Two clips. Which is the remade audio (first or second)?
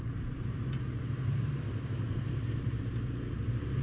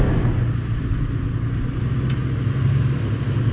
first